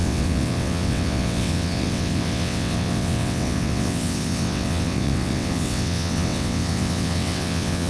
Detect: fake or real fake